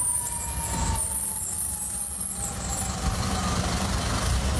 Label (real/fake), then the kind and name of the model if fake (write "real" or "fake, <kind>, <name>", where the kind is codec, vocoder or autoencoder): real